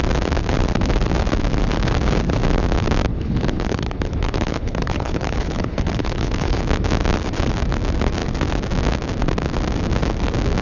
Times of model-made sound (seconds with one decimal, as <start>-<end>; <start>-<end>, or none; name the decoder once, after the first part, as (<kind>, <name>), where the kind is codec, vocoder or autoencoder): 3.1-6.6 (codec, HILCodec)